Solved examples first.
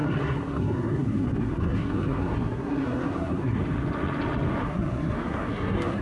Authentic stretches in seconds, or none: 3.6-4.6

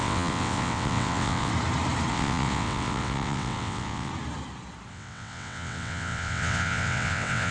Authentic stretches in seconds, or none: 1.5-2.1; 4.1-4.9

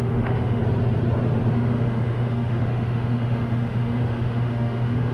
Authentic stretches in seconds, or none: 0.6-1.5

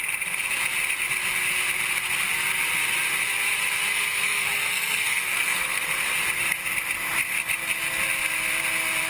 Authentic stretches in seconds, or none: 0.0-3.9; 5.8-9.1

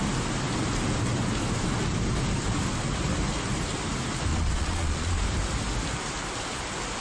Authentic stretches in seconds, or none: 0.0-4.3; 5.2-7.0